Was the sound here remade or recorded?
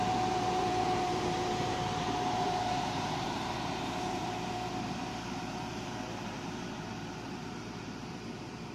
remade